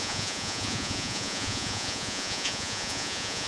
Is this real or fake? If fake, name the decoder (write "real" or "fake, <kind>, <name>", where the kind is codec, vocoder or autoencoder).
fake, vocoder, Vocos